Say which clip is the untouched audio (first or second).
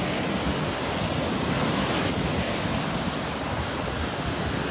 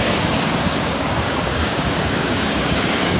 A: first